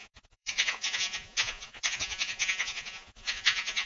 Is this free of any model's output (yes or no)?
no